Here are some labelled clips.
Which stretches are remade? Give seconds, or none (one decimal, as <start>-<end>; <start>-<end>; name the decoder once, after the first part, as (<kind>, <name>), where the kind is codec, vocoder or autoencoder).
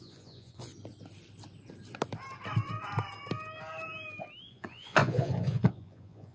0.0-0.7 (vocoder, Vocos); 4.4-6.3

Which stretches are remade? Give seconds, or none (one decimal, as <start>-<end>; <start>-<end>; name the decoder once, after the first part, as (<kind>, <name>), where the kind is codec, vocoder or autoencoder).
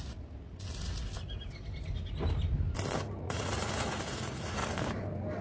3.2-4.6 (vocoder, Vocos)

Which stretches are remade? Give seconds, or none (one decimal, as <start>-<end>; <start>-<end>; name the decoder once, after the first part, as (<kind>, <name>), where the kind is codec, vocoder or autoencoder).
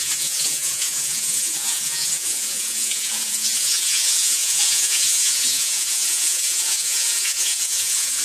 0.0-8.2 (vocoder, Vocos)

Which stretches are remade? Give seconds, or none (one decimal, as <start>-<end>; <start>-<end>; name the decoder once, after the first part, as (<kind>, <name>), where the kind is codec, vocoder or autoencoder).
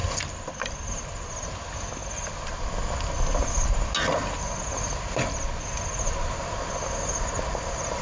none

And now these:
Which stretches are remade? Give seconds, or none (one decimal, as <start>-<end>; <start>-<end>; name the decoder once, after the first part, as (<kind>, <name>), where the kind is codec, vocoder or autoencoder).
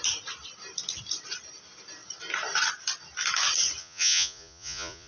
3.8-5.1 (vocoder, Vocos)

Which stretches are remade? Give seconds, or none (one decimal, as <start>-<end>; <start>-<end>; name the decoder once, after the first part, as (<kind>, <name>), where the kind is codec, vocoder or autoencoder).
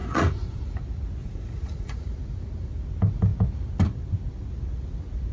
0.0-0.6 (vocoder, Vocos); 1.2-2.0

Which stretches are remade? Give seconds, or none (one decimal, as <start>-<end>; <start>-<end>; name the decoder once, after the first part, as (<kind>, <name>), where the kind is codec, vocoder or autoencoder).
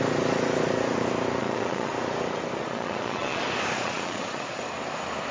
1.4-1.9 (vocoder, Vocos); 2.6-3.4; 3.8-4.6